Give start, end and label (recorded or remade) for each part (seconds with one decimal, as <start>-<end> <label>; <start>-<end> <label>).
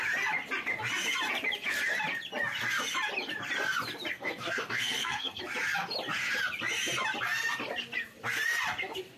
0.0-4.1 recorded; 4.1-5.4 remade; 5.4-9.2 recorded